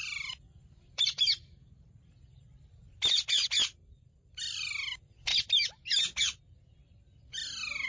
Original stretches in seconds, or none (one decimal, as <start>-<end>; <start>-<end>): 0.0-7.9